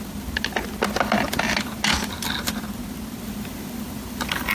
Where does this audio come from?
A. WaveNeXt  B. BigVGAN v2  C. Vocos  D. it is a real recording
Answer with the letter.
D